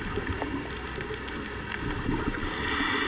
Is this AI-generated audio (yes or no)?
no